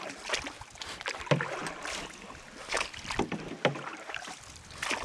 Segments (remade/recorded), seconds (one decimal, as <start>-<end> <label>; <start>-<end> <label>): 0.0-3.9 recorded; 3.9-4.4 remade; 4.4-5.0 recorded